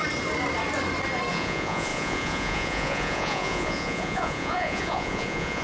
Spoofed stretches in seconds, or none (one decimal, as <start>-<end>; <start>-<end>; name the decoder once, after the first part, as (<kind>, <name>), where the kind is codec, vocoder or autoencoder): 1.3-5.6 (vocoder, Vocos)